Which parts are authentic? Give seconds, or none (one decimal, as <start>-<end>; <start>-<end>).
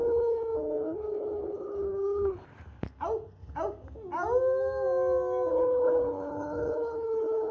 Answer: 2.5-5.5